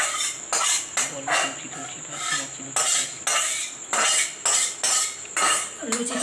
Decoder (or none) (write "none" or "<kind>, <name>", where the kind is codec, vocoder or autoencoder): none